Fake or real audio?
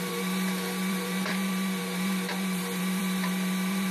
fake